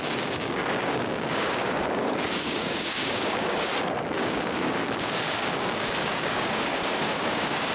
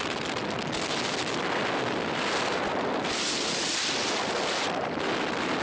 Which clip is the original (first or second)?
second